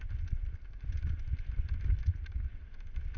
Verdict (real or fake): real